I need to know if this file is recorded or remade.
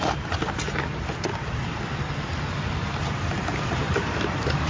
recorded